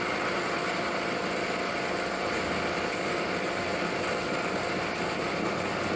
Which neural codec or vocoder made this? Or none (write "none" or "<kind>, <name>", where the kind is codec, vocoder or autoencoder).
none